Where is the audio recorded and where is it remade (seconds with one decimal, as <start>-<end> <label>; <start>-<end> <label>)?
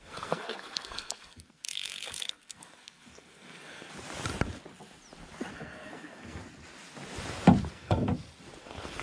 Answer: 0.0-3.9 remade; 3.9-5.5 recorded; 5.5-6.4 remade; 6.4-7.7 recorded; 7.7-8.1 remade; 8.1-8.6 recorded; 8.6-9.0 remade